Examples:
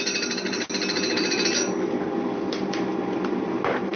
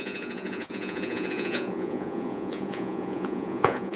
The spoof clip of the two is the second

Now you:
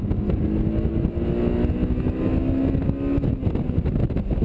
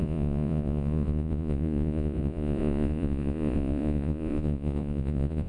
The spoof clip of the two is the second